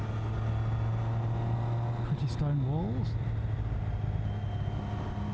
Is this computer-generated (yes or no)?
no